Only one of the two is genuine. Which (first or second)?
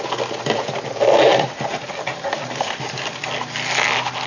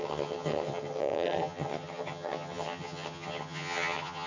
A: first